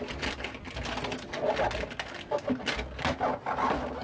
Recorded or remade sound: recorded